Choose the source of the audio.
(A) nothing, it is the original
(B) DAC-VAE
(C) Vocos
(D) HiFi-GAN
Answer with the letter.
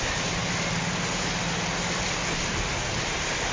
A